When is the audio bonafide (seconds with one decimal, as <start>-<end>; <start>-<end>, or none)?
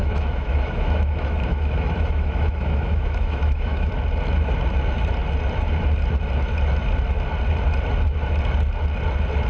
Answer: 3.9-9.5